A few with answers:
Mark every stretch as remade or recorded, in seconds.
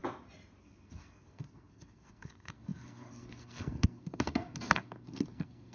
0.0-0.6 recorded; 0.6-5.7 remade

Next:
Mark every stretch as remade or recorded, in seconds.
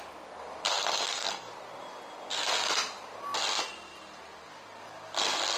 0.0-0.7 recorded; 0.7-1.5 remade; 1.5-5.6 recorded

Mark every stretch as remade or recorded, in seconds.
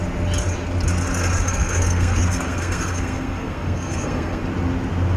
0.0-1.5 recorded; 1.5-4.4 remade; 4.4-5.2 recorded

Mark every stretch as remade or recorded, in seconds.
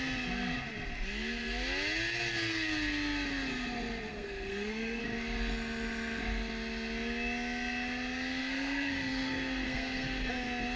0.0-4.1 recorded; 4.1-5.0 remade; 5.0-8.4 recorded; 8.4-10.3 remade; 10.3-10.8 recorded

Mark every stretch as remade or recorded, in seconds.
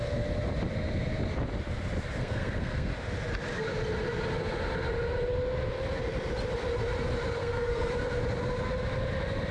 0.0-2.2 recorded; 2.2-2.9 remade; 2.9-7.4 recorded; 7.4-7.9 remade; 7.9-9.5 recorded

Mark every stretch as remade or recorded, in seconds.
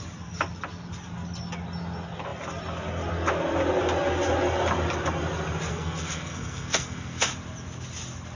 0.0-5.7 recorded; 5.7-7.3 remade; 7.3-8.4 recorded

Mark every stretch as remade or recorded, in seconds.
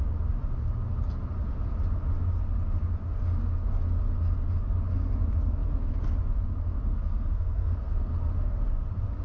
0.0-6.9 recorded; 6.9-8.1 remade; 8.1-9.2 recorded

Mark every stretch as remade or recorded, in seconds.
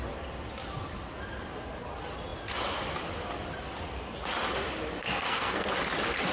0.0-5.0 recorded; 5.0-5.7 remade; 5.7-6.3 recorded